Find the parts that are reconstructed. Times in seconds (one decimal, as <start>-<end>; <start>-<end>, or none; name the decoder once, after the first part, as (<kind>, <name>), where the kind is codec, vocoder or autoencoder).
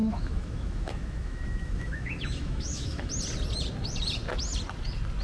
0.0-3.1 (autoencoder, DAC-VAE)